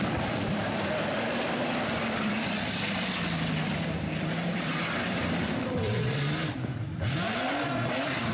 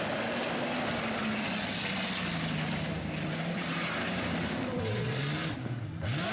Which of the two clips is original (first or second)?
second